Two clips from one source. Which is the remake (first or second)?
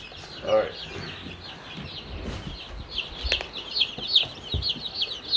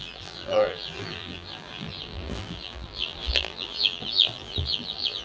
second